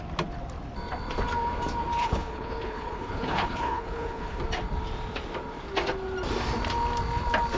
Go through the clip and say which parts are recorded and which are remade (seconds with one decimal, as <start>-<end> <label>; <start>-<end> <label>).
0.0-2.0 recorded; 2.0-4.4 remade; 4.4-7.6 recorded